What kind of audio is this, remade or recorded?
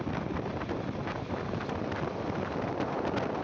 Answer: recorded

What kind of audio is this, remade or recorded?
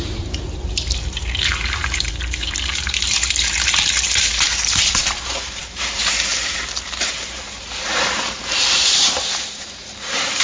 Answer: remade